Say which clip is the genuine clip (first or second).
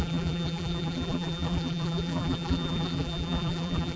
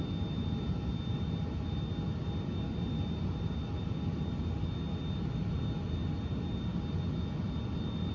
second